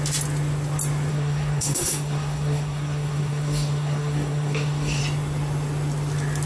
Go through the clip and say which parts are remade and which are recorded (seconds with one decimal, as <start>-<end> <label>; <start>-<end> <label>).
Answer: 0.0-1.1 recorded; 1.1-5.0 remade; 5.0-6.5 recorded